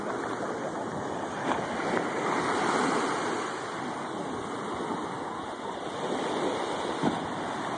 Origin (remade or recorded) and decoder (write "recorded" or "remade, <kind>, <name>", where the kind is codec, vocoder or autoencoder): recorded